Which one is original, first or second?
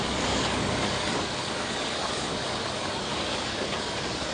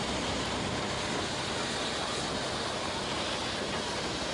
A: second